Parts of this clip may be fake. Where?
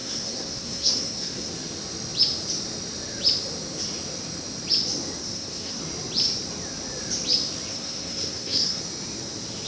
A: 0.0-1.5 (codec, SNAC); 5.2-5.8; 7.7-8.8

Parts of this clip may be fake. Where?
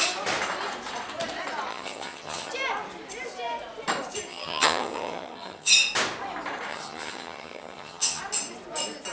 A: 1.7-2.5 (vocoder, HiFi-GAN); 4.3-5.7; 6.7-8.2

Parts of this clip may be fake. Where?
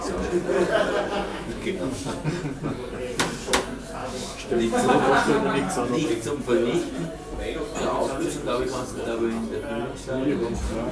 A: 1.3-2.0 (autoencoder, DAC-VAE); 4.0-5.1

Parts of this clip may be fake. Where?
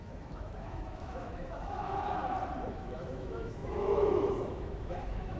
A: 0.0-2.2 (autoencoder, DAC-VAE); 2.7-5.4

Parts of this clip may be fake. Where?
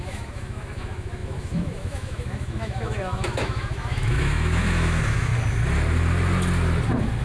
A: 0.0-5.3 (autoencoder, DAC-VAE)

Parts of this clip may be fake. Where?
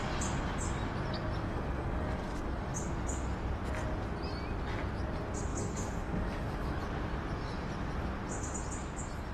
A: 1.4-2.9 (codec, DAC); 5.5-6.8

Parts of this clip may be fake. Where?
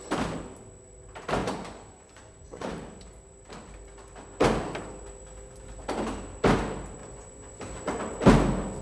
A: 1.4-2.7 (vocoder, Vocos); 7.0-7.6